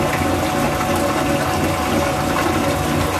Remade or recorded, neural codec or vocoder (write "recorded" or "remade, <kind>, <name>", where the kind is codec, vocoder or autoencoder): recorded